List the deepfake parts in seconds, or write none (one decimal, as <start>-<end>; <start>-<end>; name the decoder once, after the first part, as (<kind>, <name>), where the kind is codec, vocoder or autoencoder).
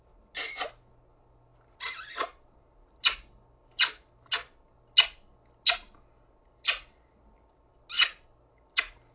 none